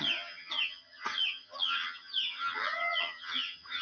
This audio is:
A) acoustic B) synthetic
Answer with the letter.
B